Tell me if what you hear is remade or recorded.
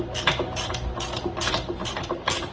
recorded